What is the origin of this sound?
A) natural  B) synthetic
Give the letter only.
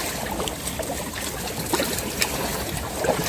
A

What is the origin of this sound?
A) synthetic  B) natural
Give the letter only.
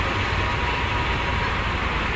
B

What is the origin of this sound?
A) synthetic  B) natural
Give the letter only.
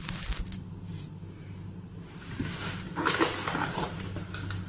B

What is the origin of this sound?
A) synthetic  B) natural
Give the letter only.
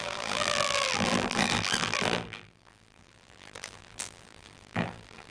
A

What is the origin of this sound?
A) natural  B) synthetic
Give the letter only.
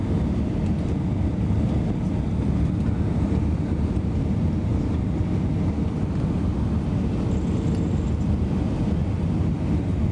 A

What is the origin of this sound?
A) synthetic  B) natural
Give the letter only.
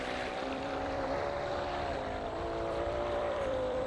A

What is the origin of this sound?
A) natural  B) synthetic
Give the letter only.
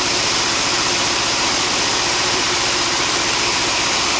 B